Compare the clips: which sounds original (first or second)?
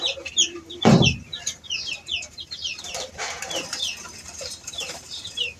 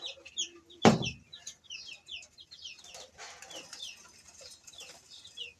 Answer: second